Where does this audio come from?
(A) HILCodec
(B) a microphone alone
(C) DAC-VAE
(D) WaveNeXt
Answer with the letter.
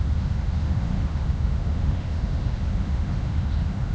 C